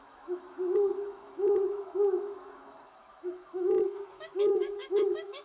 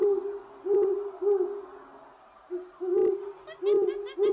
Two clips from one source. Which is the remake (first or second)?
first